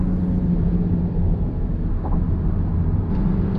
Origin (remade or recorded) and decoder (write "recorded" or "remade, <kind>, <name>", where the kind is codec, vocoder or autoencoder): recorded